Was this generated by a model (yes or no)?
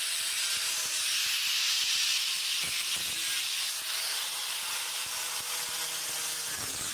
no